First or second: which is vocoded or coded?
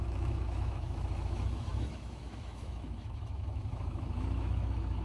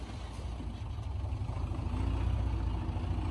first